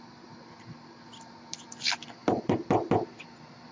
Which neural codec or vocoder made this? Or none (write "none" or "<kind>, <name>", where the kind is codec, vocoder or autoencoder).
none